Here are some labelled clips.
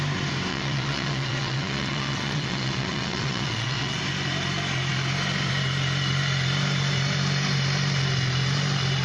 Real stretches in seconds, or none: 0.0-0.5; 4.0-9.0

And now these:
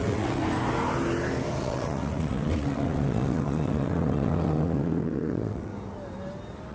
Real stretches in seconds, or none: 0.4-1.6; 5.7-6.7

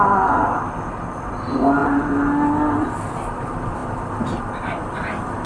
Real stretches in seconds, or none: 0.0-5.5